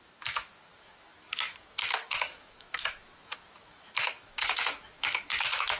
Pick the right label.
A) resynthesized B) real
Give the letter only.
A